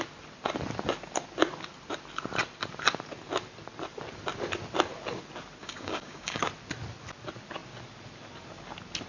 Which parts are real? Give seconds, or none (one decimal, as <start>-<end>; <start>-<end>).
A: 0.0-5.6; 6.4-9.1